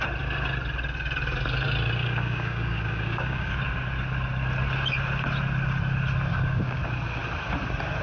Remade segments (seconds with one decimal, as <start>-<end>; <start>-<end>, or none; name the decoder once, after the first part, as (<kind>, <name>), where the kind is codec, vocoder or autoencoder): 2.0-3.5 (codec, DAC); 6.3-6.8

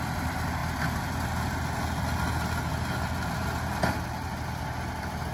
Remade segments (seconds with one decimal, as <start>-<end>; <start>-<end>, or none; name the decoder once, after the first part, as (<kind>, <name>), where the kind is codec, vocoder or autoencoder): 0.0-0.6 (vocoder, BigVGAN v2); 3.8-5.3

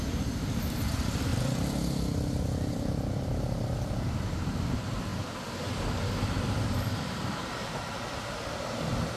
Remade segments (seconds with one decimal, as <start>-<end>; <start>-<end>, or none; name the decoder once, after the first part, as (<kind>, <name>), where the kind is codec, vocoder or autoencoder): 0.0-1.3 (vocoder, BigVGAN v2); 3.1-5.1; 6.8-7.4

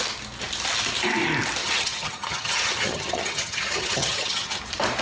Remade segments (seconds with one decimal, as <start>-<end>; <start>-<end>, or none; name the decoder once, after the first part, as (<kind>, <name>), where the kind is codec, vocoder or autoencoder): 1.6-4.6 (vocoder, HiFi-GAN)

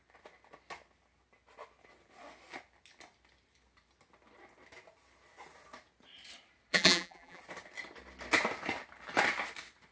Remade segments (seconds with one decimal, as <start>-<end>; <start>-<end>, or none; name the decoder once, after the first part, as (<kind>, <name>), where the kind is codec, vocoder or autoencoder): 6.7-7.4 (vocoder, BigVGAN v2)

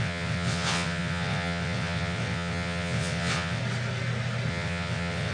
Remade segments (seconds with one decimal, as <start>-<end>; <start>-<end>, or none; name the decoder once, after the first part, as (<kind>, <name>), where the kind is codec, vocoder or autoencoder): 0.0-3.6 (vocoder, WaveNeXt); 4.5-5.3

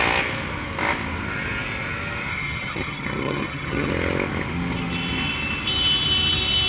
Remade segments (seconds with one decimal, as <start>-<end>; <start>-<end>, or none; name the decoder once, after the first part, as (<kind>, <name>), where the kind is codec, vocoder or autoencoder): 2.3-3.9 (vocoder, HiFi-GAN)